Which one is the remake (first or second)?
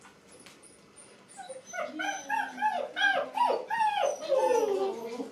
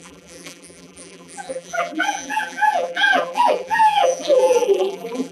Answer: second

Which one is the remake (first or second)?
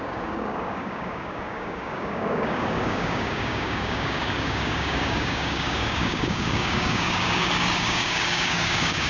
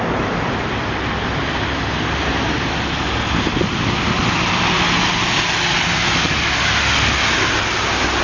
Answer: first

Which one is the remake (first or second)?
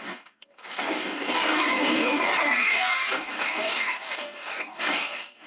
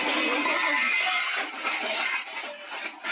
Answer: first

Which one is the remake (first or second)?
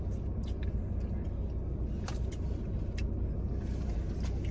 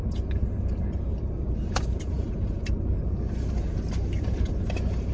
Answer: second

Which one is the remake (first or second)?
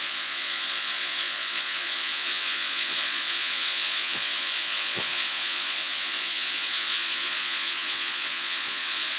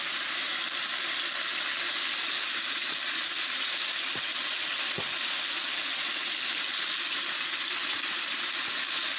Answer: first